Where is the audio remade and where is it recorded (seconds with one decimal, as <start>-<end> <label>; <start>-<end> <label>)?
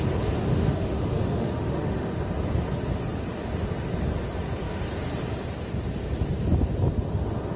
0.0-0.5 recorded; 0.5-2.2 remade; 2.2-7.6 recorded